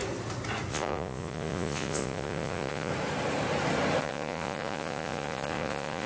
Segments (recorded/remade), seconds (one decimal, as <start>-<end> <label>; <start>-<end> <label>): 0.0-0.7 recorded; 0.7-2.9 remade; 2.9-4.0 recorded; 4.0-6.1 remade